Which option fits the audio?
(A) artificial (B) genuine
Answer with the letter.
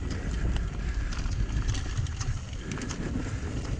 B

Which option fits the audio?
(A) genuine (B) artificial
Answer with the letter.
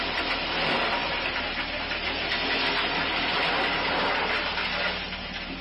A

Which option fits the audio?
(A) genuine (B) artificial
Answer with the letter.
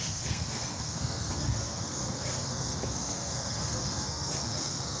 B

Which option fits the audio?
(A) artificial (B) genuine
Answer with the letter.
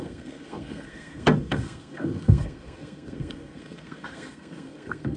A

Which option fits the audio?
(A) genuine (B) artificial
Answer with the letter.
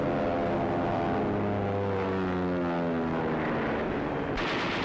A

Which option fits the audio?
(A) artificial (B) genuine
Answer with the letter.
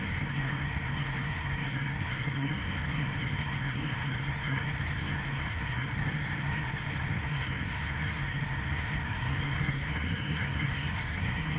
A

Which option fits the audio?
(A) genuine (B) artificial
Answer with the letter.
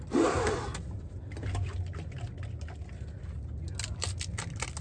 A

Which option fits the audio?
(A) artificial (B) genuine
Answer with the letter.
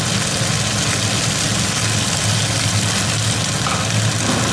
B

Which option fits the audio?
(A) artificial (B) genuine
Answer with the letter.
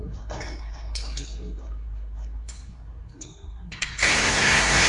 A